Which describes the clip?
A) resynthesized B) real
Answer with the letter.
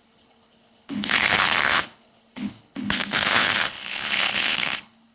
A